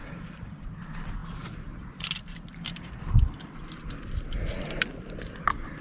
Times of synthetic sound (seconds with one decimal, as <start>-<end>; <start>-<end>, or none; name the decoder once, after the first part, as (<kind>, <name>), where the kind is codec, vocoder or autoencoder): 0.0-0.7 (vocoder, BigVGAN v2)